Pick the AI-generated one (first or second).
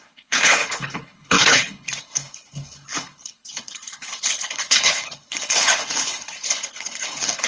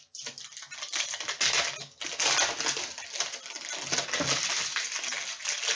first